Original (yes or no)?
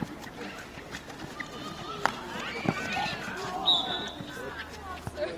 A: yes